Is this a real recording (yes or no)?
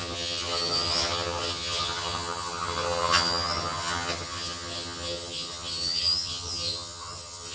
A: no